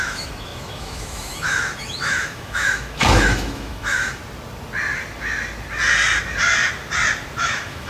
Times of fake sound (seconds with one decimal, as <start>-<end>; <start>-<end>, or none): 0.0-4.2; 7.4-7.9